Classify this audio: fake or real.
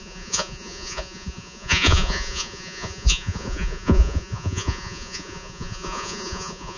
fake